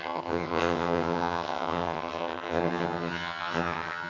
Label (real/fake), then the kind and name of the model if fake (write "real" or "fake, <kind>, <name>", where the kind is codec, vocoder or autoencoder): fake, vocoder, HiFi-GAN